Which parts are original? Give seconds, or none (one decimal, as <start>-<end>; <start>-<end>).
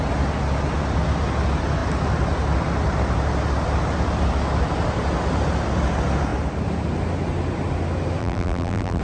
0.0-8.2